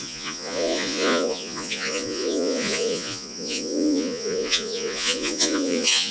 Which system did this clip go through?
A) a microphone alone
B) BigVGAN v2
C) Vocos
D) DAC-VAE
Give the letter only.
C